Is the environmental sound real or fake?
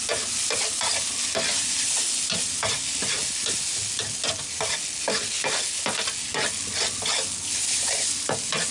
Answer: real